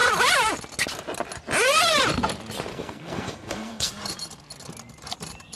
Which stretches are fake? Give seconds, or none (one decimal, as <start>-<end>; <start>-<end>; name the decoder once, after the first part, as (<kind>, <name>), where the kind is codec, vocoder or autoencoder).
2.7-3.9 (codec, SNAC)